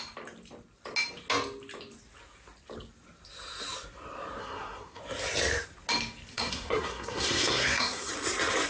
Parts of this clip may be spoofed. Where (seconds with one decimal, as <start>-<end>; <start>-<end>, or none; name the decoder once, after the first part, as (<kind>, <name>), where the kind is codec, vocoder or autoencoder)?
4.4-5.0 (codec, SNAC); 6.3-8.1